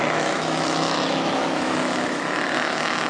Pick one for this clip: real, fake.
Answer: fake